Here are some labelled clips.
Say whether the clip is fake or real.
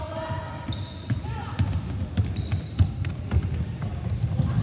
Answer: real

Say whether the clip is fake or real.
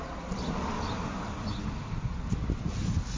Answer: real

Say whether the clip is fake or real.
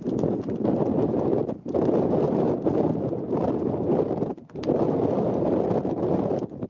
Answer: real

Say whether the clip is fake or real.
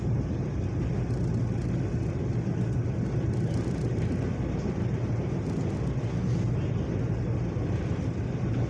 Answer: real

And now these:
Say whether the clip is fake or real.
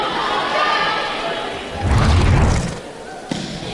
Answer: real